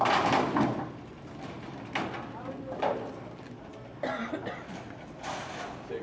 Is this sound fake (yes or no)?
no